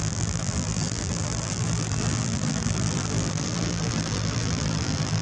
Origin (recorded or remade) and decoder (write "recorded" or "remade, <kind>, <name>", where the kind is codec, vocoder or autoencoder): remade, vocoder, BigVGAN v2